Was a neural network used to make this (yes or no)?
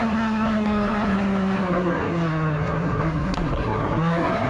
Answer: yes